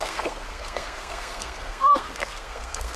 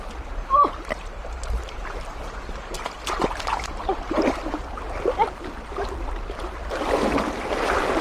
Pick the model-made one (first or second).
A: first